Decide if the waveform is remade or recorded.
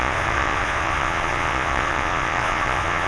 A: remade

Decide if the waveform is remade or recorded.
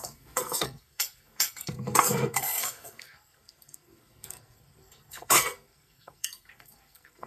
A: remade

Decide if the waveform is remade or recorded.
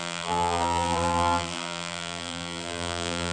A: remade